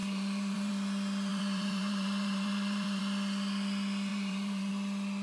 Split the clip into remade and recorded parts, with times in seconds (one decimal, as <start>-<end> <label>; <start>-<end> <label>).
0.0-0.7 remade; 0.7-1.3 recorded; 1.3-3.0 remade; 3.0-4.1 recorded; 4.1-4.7 remade; 4.7-5.2 recorded

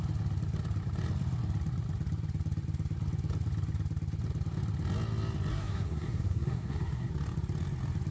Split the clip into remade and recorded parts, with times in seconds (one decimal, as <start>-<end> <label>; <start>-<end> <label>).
0.0-5.5 recorded; 5.5-7.1 remade; 7.1-8.1 recorded

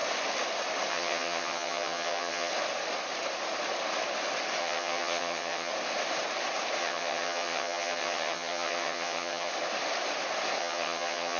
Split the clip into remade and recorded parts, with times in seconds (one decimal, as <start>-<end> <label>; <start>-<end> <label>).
0.0-0.9 recorded; 0.9-2.5 remade; 2.5-4.6 recorded; 4.6-5.7 remade; 5.7-6.8 recorded; 6.8-9.5 remade; 9.5-10.6 recorded; 10.6-11.4 remade

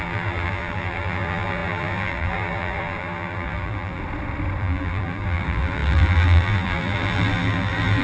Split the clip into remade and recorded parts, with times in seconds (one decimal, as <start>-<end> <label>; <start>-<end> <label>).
0.0-4.0 remade; 4.0-4.6 recorded; 4.6-8.0 remade

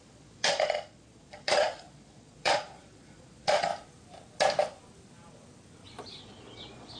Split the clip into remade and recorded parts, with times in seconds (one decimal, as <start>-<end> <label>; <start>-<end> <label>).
0.0-3.7 remade; 3.7-6.2 recorded; 6.2-7.0 remade

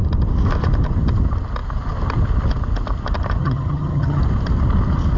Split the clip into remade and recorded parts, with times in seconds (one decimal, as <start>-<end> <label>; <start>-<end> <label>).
0.0-3.4 recorded; 3.4-4.2 remade; 4.2-5.2 recorded

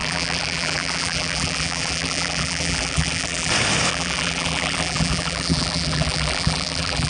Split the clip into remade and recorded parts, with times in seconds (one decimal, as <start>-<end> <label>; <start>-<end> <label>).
0.0-3.5 remade; 3.5-3.9 recorded; 3.9-7.1 remade